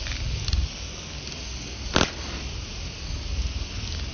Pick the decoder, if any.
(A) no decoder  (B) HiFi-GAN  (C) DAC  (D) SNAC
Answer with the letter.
A